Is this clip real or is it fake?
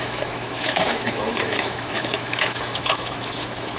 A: fake